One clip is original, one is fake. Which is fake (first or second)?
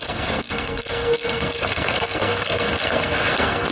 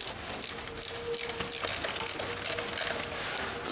first